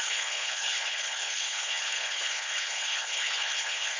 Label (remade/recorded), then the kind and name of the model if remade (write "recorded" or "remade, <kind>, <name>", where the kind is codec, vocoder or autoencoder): remade, codec, HILCodec